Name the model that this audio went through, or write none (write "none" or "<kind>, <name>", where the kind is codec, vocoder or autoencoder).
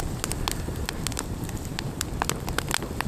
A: none